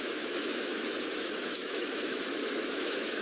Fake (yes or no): yes